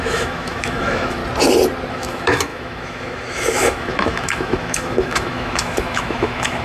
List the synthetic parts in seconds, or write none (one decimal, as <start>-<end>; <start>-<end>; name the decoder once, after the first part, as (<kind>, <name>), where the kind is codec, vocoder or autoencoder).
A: 0.0-1.2 (autoencoder, DAC-VAE); 1.9-6.6